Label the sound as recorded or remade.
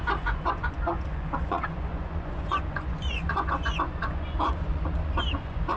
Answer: remade